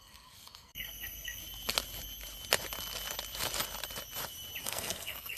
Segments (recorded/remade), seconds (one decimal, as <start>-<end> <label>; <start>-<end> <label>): 0.0-1.4 remade; 1.4-4.6 recorded; 4.6-5.4 remade